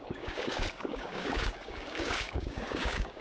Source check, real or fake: fake